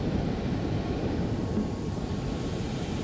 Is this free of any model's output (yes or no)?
yes